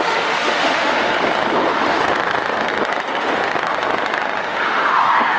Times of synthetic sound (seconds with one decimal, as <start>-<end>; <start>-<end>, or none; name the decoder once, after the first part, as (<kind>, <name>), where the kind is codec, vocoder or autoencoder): 0.0-1.1 (autoencoder, DAC-VAE); 1.7-2.7; 3.2-3.8; 4.4-5.4